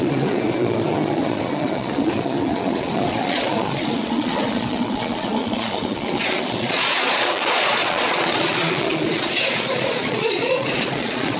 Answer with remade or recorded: remade